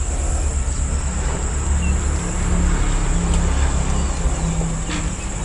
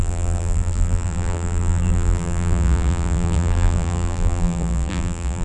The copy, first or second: second